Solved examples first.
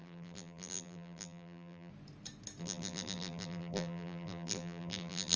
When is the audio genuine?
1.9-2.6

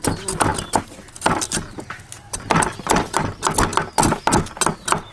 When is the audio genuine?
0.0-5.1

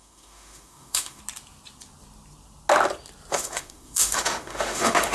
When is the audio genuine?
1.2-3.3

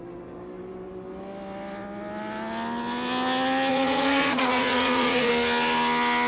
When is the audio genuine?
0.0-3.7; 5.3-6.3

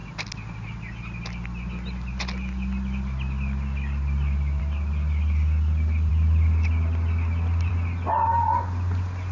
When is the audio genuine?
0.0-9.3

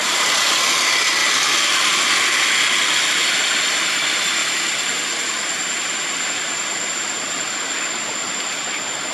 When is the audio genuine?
0.0-9.1